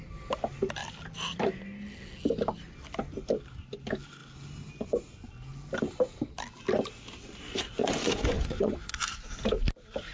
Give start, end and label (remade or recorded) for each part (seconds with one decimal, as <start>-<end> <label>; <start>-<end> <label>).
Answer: 0.0-7.8 recorded; 7.8-8.9 remade; 8.9-10.1 recorded

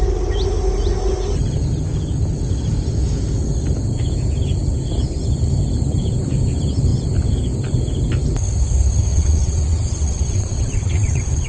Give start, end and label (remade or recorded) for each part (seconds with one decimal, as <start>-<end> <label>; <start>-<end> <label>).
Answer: 0.0-9.1 recorded; 9.1-11.5 remade

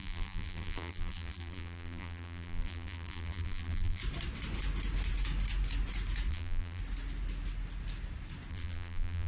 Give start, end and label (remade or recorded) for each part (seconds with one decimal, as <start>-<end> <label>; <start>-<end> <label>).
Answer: 0.0-4.0 remade; 4.0-6.3 recorded; 6.3-6.8 remade; 6.8-8.5 recorded; 8.5-9.3 remade

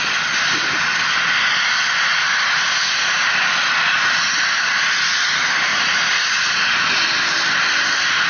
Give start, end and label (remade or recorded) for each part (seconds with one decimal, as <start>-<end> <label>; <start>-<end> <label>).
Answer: 0.0-8.3 recorded

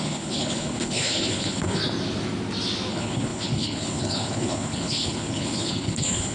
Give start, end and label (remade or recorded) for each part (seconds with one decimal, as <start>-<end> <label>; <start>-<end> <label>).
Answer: 0.0-1.8 remade; 1.8-2.9 recorded; 2.9-6.3 remade